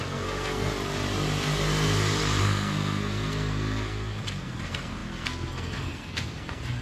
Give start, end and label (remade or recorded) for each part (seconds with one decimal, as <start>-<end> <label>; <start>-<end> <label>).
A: 0.0-0.7 remade; 0.7-2.4 recorded; 2.4-6.8 remade